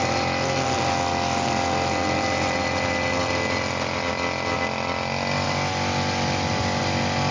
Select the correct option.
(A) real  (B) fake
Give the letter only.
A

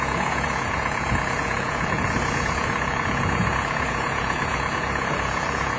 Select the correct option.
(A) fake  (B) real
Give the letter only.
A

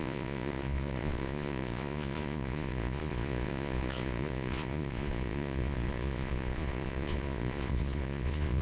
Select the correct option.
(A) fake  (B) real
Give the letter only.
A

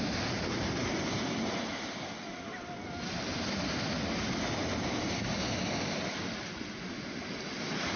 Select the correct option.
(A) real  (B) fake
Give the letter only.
A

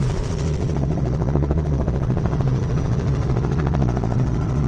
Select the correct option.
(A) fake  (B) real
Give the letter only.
A